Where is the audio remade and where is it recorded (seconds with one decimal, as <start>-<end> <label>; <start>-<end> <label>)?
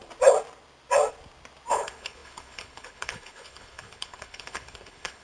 0.0-1.7 recorded; 1.7-5.2 remade